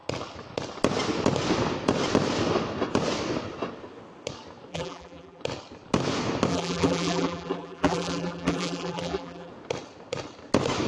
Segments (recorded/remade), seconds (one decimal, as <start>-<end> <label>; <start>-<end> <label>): 0.0-4.7 recorded; 4.7-5.4 remade; 5.4-6.5 recorded; 6.5-9.5 remade; 9.5-10.9 recorded